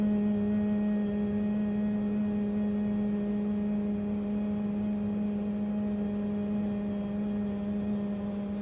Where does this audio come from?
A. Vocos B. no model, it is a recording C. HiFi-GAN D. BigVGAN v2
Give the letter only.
B